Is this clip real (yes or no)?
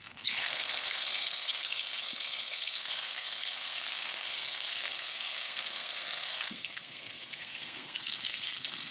no